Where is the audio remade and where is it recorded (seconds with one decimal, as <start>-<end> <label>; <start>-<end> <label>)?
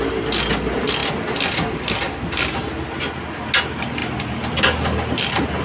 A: 0.0-5.6 recorded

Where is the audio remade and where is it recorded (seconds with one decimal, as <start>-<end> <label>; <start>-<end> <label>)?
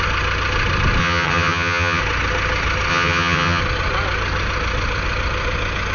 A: 0.0-1.0 recorded; 1.0-2.0 remade; 2.0-2.9 recorded; 2.9-3.6 remade; 3.6-5.9 recorded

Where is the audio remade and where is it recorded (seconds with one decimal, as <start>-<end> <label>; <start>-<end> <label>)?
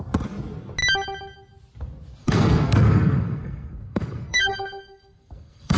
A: 0.0-2.2 recorded; 2.2-5.8 remade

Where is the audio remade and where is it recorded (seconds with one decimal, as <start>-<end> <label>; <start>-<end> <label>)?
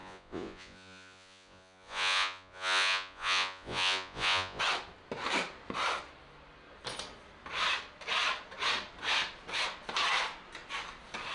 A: 0.0-4.6 remade; 4.6-11.3 recorded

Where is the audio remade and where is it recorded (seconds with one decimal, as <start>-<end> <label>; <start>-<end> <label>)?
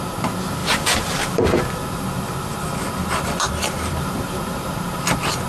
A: 0.0-0.6 recorded; 0.6-1.6 remade; 1.6-3.0 recorded; 3.0-5.0 remade; 5.0-5.5 recorded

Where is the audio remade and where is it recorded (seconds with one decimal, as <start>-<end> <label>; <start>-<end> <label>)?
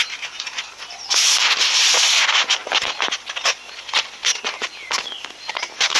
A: 0.0-6.0 recorded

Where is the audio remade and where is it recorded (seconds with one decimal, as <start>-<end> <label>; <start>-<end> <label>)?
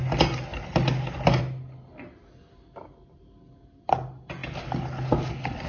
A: 0.0-5.7 recorded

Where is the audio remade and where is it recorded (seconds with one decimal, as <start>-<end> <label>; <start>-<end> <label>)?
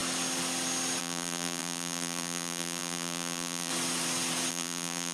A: 0.0-1.0 recorded; 1.0-3.7 remade; 3.7-4.5 recorded; 4.5-5.1 remade